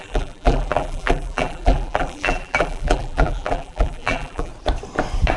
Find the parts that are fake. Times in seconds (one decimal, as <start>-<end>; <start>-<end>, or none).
0.0-4.5